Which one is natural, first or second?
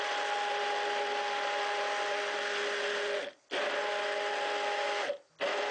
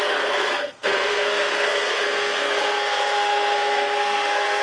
first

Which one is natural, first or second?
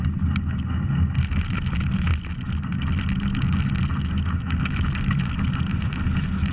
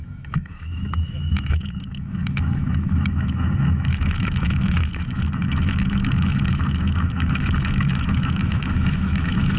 first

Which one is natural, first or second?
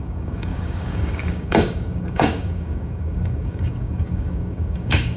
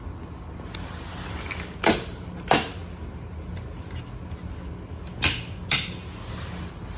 second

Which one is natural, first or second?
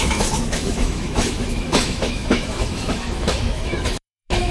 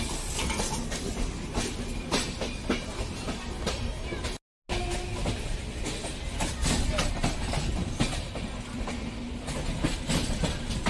second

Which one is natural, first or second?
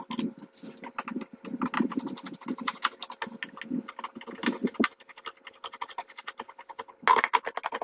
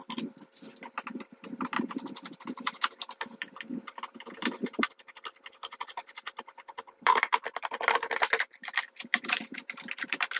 first